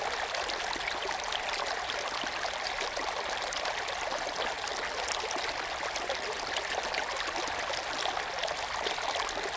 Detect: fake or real real